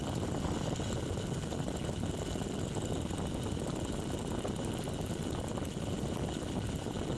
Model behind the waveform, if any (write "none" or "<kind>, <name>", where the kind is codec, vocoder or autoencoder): none